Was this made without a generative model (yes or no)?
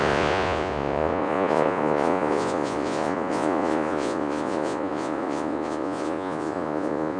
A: no